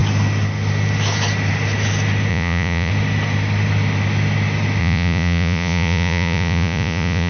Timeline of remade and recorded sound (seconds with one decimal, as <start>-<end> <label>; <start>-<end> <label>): 0.0-2.3 recorded; 2.3-2.9 remade; 2.9-4.8 recorded; 4.8-7.3 remade